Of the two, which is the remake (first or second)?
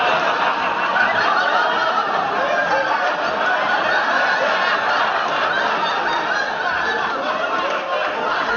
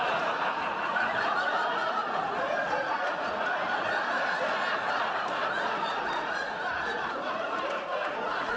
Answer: second